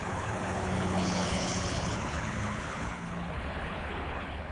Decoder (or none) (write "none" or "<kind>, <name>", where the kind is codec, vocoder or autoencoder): codec, HILCodec